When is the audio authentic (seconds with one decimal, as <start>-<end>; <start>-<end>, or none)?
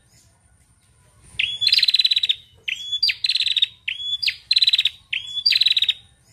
0.0-4.1; 5.7-6.3